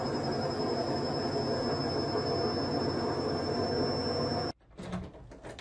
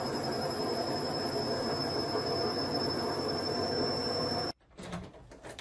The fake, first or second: second